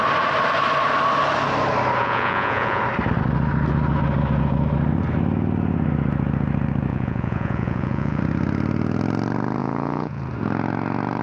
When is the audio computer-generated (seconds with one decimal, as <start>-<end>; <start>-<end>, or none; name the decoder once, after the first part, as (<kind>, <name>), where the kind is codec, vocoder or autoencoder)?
2.0-2.8 (vocoder, Vocos); 6.9-8.2; 9.6-10.2